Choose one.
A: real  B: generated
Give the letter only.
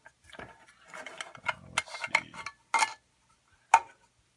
A